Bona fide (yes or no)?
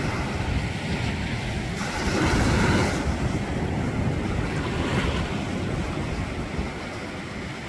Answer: yes